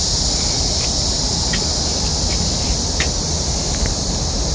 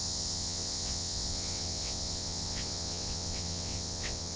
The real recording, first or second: first